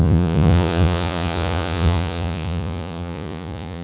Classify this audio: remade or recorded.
remade